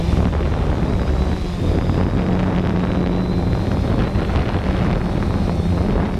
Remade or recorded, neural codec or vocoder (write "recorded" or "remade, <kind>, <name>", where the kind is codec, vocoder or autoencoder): recorded